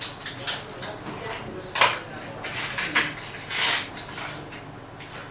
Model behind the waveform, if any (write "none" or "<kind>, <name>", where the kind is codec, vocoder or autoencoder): none